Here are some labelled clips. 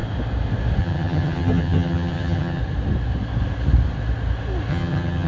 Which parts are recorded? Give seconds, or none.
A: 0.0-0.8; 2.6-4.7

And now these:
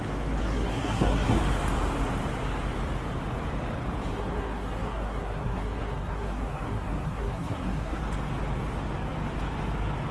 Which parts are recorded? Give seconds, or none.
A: 0.0-0.4; 1.4-4.1; 8.0-10.1

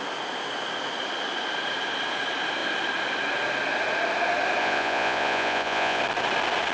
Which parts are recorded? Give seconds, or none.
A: 0.0-4.6; 6.0-6.7

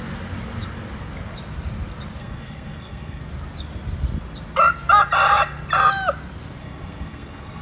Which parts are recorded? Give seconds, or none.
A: 0.0-2.2; 3.2-6.6

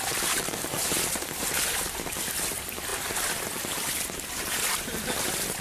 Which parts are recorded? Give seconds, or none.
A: 0.0-5.6

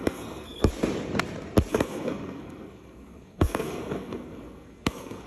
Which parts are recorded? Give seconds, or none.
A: 0.7-1.7

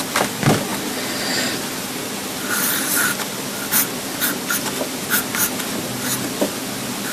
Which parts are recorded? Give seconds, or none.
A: 0.0-7.1